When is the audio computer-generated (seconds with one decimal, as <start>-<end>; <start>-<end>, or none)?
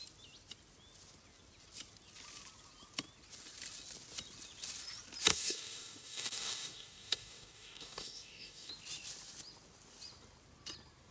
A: 5.3-8.7